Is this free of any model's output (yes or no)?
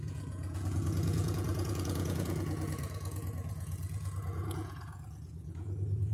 no